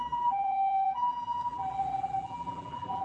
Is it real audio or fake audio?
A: fake